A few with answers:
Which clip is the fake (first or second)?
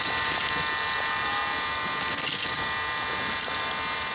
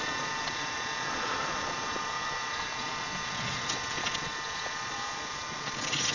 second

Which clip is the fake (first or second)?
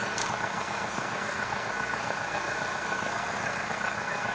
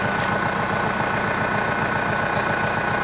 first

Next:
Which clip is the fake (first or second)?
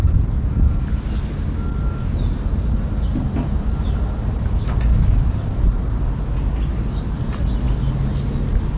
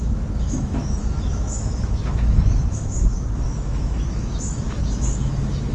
second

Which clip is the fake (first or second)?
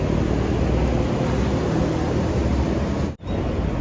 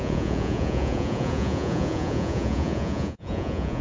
second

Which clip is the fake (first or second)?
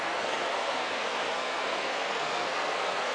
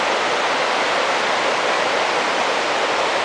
first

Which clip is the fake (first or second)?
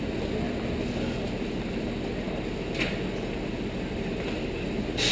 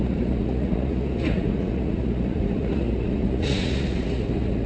second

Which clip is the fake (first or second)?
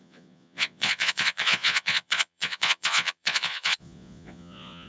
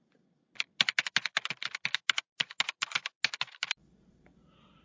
first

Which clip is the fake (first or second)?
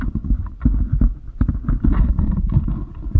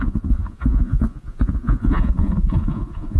second